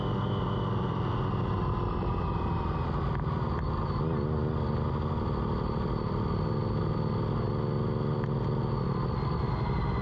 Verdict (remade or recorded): recorded